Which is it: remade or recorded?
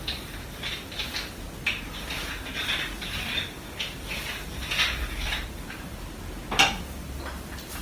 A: recorded